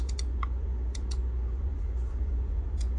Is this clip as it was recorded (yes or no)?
no